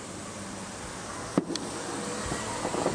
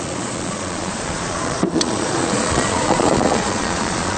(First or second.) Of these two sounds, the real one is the first